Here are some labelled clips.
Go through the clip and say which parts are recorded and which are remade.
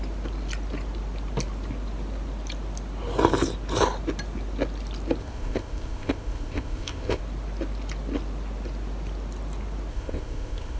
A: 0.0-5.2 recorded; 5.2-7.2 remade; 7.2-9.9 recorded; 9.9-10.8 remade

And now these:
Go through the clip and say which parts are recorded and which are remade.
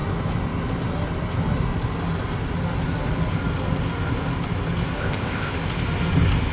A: 0.0-5.0 recorded; 5.0-5.5 remade; 5.5-6.5 recorded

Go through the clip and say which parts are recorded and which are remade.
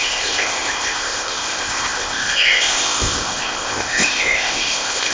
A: 0.0-5.1 remade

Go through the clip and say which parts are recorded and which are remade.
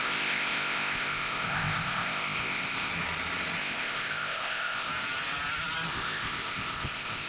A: 0.0-2.9 remade; 2.9-3.6 recorded; 3.6-4.9 remade; 4.9-5.9 recorded; 5.9-7.3 remade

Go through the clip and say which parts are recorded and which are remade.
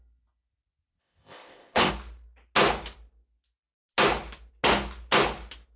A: 0.0-1.0 recorded; 1.0-1.9 remade; 1.9-5.8 recorded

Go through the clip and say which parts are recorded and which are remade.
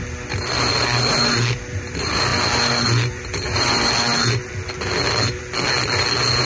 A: 0.0-6.4 recorded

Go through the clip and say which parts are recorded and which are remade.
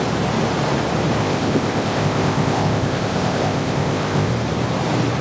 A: 0.0-1.2 recorded; 1.2-4.3 remade; 4.3-5.2 recorded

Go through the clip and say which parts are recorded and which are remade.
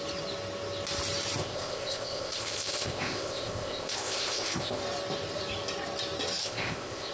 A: 0.0-1.4 recorded; 1.4-4.8 remade; 4.8-6.4 recorded; 6.4-7.1 remade